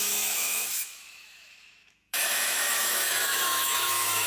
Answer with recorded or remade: remade